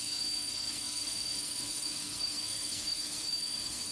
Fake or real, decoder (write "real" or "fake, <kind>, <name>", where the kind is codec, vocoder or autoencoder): fake, codec, SNAC